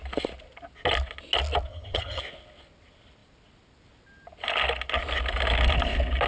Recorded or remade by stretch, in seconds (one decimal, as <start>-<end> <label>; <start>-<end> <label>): 0.0-1.7 recorded; 1.7-2.2 remade; 2.2-6.3 recorded